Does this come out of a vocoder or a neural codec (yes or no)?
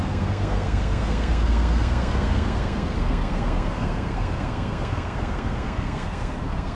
yes